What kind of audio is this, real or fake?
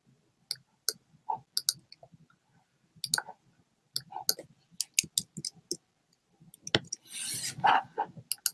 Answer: real